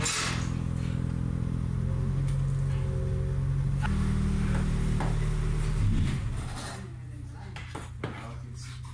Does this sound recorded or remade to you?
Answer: recorded